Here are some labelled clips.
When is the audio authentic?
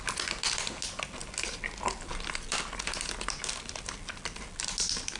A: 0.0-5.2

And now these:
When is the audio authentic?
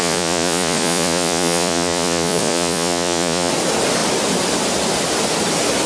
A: 3.5-5.9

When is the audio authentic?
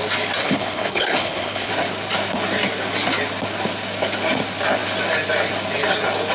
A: 0.0-0.4; 1.7-6.3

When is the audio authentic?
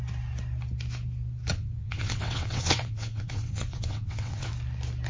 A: 0.0-1.5; 4.5-5.1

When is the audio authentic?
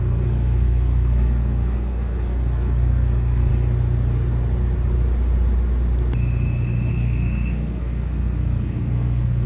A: 3.5-6.9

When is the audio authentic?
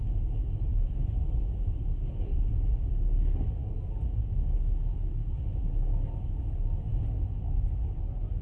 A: 0.0-0.7; 2.5-6.9; 7.5-8.4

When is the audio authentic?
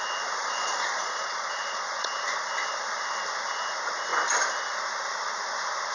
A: 0.0-0.4; 2.1-5.9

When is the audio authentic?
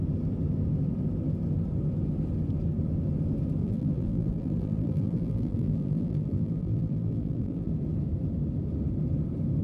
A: 0.0-3.6; 7.7-9.6